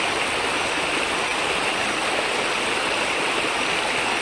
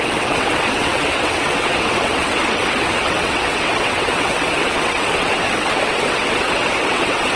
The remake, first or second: second